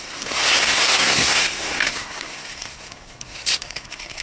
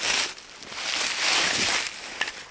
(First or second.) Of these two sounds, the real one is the second